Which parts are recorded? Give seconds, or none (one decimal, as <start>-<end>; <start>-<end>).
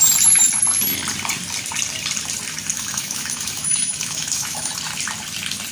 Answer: 0.0-2.7; 4.7-5.7